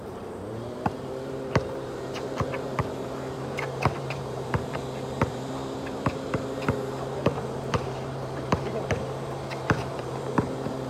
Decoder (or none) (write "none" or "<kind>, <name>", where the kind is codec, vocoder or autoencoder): vocoder, BigVGAN v2